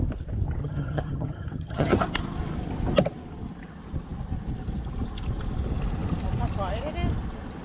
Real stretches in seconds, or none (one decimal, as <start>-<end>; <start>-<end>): 0.0-0.6; 2.0-7.6